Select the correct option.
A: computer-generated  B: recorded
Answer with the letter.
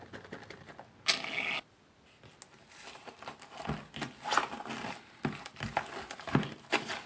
B